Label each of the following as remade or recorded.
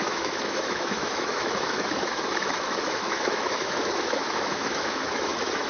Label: remade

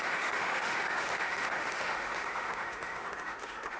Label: remade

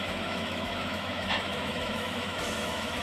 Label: remade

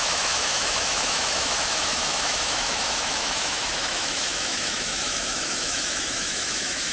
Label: remade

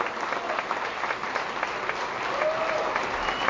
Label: recorded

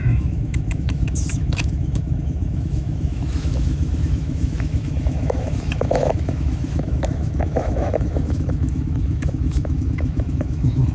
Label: remade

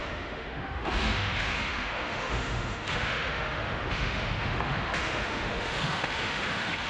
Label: remade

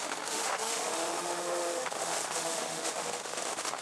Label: remade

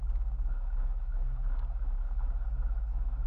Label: remade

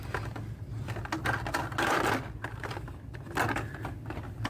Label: recorded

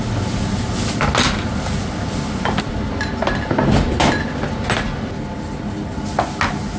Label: recorded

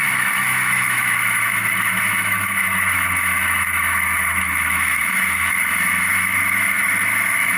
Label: remade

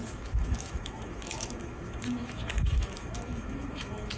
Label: remade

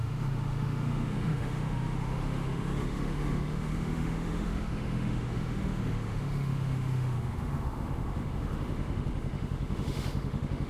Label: remade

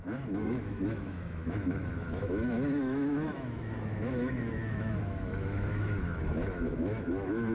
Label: remade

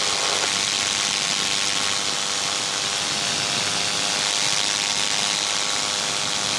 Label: recorded